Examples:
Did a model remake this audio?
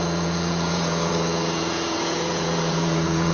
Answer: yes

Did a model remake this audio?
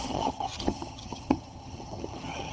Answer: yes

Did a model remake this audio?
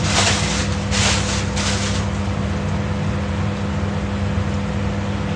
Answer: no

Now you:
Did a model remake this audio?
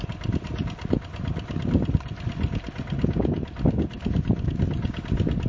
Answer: no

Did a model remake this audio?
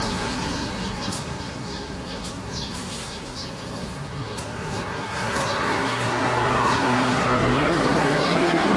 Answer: yes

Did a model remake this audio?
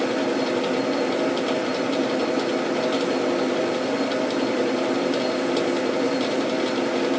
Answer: no